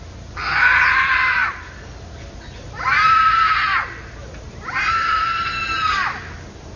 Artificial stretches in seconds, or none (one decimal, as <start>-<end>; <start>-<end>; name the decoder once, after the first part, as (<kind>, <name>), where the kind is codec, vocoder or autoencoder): none